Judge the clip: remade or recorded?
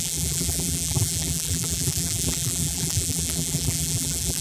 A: remade